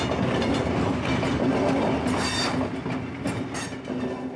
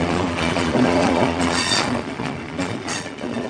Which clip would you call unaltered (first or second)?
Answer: first